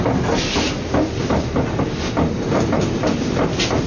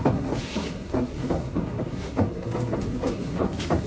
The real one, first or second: first